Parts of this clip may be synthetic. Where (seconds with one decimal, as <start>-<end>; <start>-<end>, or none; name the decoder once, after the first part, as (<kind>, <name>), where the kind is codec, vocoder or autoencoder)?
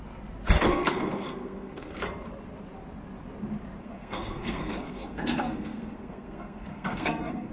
0.7-2.0 (codec, SNAC); 3.8-7.5